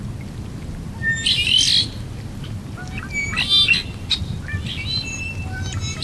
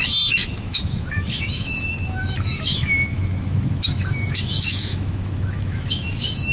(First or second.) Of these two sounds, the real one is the first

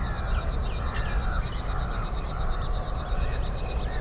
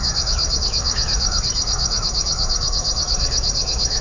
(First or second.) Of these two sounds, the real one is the first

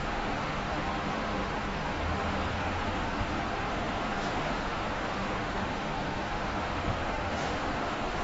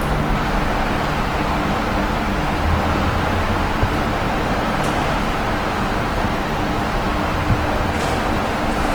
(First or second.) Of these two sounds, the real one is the second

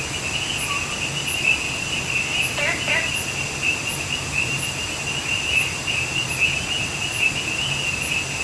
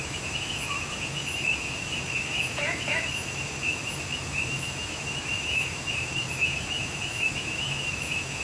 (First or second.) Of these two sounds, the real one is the first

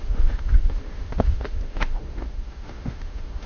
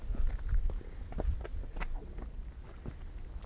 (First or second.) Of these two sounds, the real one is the second